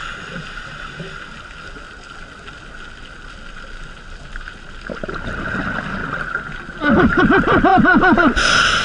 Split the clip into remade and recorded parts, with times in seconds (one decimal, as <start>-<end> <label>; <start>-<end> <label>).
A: 0.0-8.8 recorded